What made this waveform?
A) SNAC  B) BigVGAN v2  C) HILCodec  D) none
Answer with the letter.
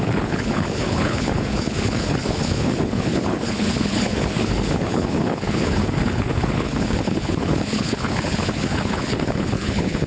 C